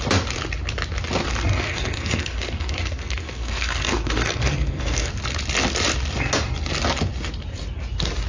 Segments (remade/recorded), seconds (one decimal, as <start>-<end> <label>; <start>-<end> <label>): 0.0-1.5 recorded; 1.5-5.1 remade; 5.1-8.3 recorded